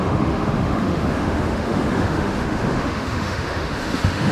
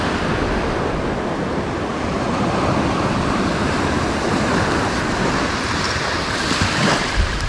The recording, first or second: second